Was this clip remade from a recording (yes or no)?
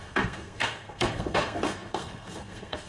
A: yes